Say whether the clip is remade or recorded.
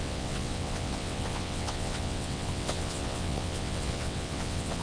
remade